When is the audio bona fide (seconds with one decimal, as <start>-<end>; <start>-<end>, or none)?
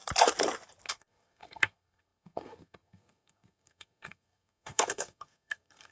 0.0-0.9